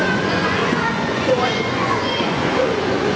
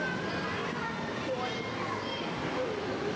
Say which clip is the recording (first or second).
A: second